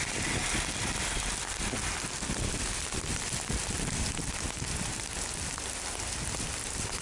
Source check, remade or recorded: recorded